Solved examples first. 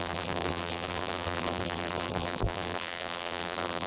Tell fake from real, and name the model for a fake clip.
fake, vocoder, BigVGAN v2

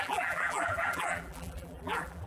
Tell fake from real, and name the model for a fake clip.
fake, vocoder, BigVGAN v2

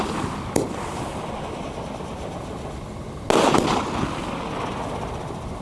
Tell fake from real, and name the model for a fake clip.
real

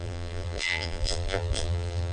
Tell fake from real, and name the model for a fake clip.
fake, vocoder, BigVGAN v2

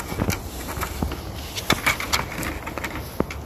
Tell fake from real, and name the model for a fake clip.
real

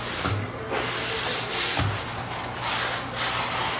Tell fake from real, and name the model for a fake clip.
real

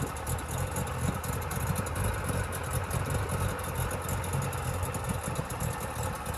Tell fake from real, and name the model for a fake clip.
real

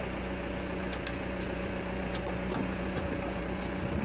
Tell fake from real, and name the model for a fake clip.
fake, vocoder, Vocos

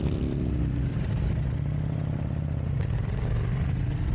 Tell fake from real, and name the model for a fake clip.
fake, vocoder, BigVGAN v2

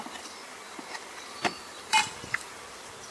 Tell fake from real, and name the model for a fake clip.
fake, vocoder, BigVGAN v2